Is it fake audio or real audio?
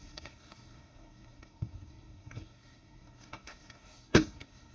fake